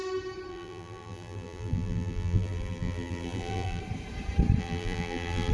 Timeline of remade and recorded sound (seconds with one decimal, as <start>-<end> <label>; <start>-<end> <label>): 0.0-0.5 recorded; 0.5-3.8 remade; 3.8-4.6 recorded; 4.6-5.5 remade